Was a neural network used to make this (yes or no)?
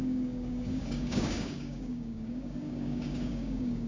yes